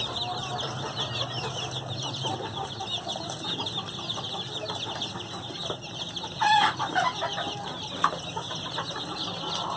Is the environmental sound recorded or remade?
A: recorded